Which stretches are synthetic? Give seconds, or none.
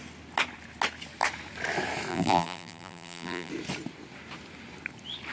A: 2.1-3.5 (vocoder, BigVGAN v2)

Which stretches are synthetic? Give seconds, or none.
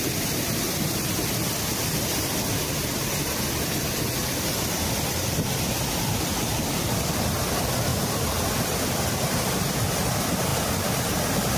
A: 4.2-5.7 (vocoder, BigVGAN v2); 7.9-9.6; 10.5-11.6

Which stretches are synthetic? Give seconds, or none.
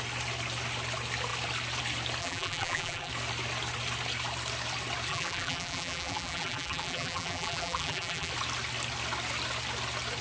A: 2.2-3.1 (vocoder, BigVGAN v2); 5.1-8.3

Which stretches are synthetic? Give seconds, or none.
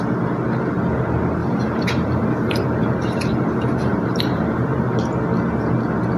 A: 1.4-5.0 (vocoder, BigVGAN v2)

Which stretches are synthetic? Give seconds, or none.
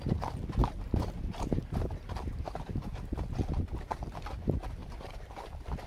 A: 0.6-3.1 (vocoder, BigVGAN v2); 4.8-5.4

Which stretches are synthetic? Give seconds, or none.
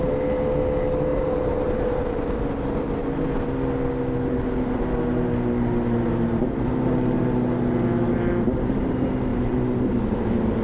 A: 1.1-2.0 (vocoder, BigVGAN v2); 9.3-9.9